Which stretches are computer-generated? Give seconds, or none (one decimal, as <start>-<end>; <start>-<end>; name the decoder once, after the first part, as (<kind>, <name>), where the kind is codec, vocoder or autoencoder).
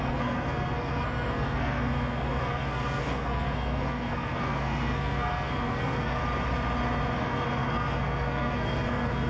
0.0-6.2 (codec, SNAC); 7.2-9.3